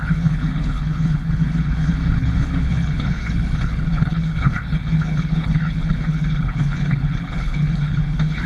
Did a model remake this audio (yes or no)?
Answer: yes